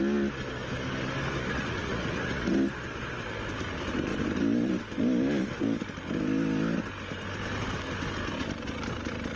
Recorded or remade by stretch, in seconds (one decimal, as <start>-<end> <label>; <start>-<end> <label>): 0.0-1.5 recorded; 1.5-2.5 remade; 2.5-9.4 recorded